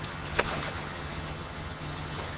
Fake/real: fake